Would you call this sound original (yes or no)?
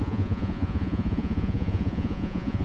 no